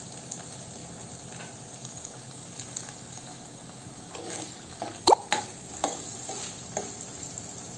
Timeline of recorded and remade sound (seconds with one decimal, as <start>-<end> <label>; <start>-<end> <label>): 0.0-1.8 recorded; 1.8-5.0 remade; 5.0-5.8 recorded; 5.8-6.3 remade; 6.3-7.8 recorded